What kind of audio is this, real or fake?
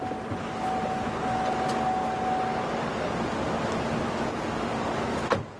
real